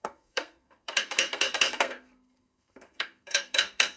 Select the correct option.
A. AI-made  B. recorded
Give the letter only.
A